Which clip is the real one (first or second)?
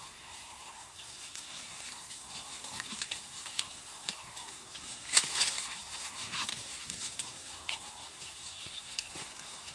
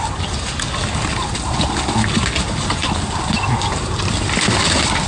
second